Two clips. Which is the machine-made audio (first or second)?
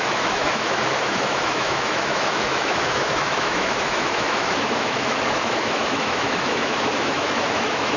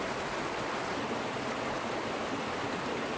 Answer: first